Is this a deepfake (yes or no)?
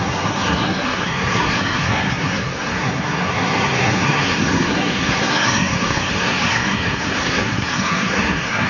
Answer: yes